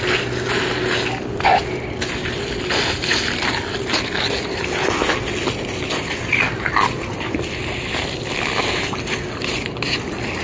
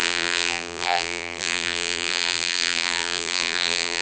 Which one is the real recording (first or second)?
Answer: first